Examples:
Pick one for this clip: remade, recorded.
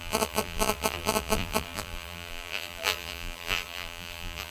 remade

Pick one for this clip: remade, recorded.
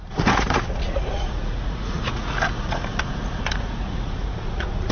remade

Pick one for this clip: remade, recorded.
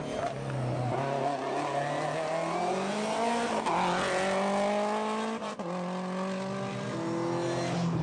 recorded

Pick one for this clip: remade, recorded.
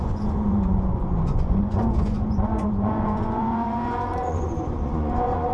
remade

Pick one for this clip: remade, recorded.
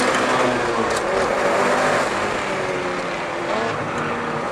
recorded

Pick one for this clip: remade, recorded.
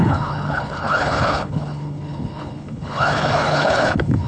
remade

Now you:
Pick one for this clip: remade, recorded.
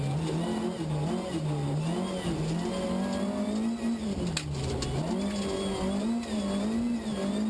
recorded